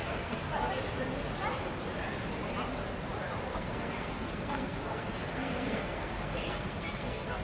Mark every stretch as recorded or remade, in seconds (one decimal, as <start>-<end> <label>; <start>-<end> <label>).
0.0-0.5 remade; 0.5-3.5 recorded; 3.5-7.4 remade